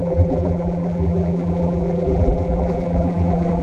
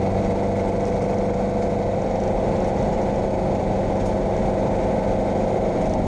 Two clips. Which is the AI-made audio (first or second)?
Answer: first